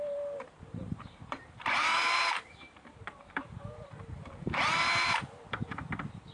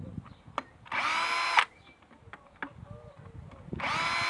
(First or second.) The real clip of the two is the second